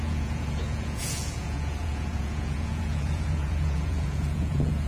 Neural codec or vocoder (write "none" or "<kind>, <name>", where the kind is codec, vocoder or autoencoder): vocoder, Vocos